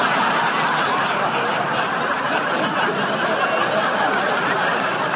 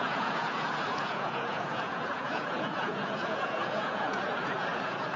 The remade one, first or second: second